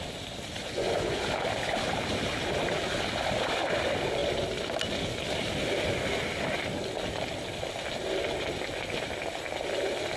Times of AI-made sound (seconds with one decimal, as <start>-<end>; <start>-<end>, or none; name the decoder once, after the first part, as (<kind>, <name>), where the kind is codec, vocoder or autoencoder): 0.6-1.2 (vocoder, Vocos)